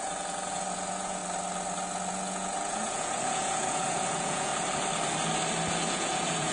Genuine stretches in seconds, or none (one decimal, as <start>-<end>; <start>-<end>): 1.2-2.1; 4.5-5.9